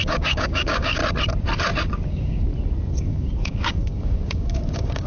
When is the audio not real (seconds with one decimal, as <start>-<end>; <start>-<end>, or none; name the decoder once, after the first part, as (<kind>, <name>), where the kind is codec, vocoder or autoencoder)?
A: 0.0-1.0 (codec, DAC); 2.1-2.5; 3.0-5.1